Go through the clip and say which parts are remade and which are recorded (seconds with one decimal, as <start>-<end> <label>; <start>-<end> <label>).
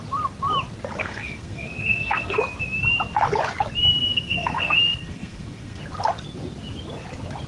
0.0-1.0 recorded; 1.0-2.4 remade; 2.4-4.0 recorded; 4.0-5.8 remade; 5.8-7.5 recorded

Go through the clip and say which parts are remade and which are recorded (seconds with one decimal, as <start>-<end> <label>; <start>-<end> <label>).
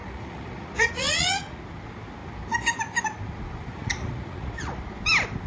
0.0-1.6 remade; 1.6-3.7 recorded; 3.7-4.8 remade; 4.8-5.5 recorded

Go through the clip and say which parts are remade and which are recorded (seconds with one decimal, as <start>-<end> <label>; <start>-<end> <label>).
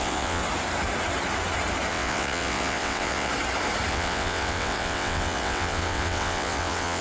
0.0-0.4 remade; 0.4-1.9 recorded; 1.9-3.3 remade; 3.3-3.9 recorded; 3.9-7.0 remade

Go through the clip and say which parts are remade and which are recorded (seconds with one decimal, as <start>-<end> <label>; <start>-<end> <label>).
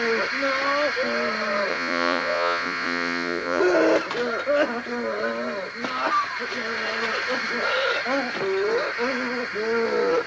0.0-1.7 recorded; 1.7-3.6 remade; 3.6-10.3 recorded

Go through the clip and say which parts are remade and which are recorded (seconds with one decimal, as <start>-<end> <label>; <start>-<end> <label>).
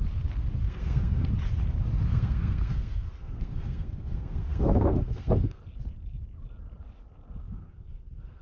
0.0-0.6 recorded; 0.6-1.3 remade; 1.3-2.1 recorded; 2.1-5.6 remade; 5.6-7.4 recorded; 7.4-8.4 remade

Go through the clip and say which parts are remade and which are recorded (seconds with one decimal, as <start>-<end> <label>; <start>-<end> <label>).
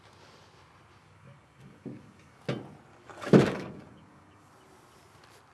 0.0-1.0 recorded; 1.0-2.4 remade; 2.4-2.9 recorded; 2.9-4.5 remade; 4.5-5.5 recorded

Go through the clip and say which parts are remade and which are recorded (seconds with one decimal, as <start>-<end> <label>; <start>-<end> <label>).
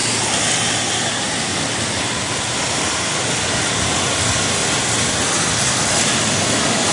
0.0-0.9 recorded; 0.9-4.6 remade; 4.6-6.9 recorded